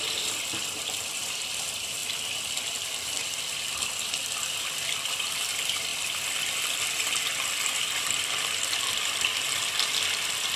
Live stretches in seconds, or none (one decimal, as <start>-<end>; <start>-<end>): 2.0-2.7; 5.9-8.0